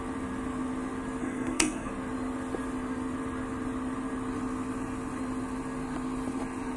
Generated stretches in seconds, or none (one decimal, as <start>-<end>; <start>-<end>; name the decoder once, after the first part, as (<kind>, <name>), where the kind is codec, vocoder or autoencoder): 1.2-1.9 (codec, SNAC)

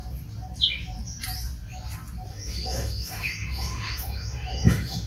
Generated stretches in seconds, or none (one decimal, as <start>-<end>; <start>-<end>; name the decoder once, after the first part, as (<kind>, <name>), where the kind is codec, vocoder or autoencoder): 2.3-5.1 (autoencoder, DAC-VAE)

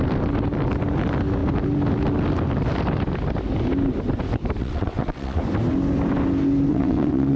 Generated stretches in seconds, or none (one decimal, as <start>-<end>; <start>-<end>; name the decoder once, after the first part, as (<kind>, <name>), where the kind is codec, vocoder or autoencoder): 4.6-5.4 (vocoder, WaveNeXt); 6.7-7.4

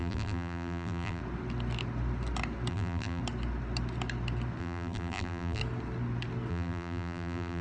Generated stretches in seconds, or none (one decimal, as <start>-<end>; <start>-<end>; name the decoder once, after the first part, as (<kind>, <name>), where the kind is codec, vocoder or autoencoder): 0.0-1.2 (vocoder, BigVGAN v2); 2.7-3.2; 4.6-5.6; 6.5-7.6